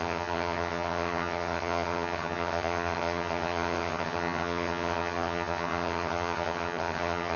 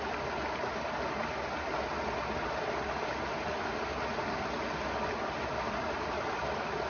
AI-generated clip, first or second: first